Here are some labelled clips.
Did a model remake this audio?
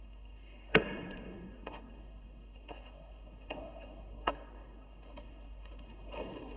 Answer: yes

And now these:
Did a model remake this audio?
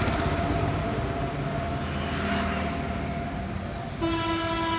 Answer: no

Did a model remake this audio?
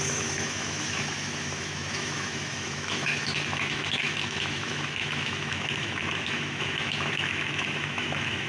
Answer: yes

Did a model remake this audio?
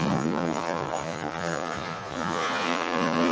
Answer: yes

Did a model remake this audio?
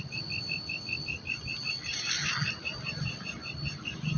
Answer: no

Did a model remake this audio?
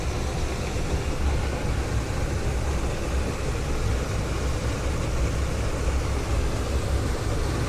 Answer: no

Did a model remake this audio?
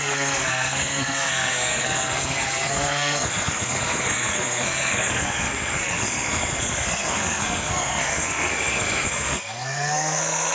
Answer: yes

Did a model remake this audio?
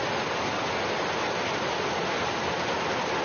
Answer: no